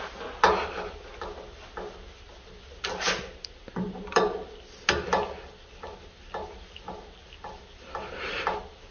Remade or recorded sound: recorded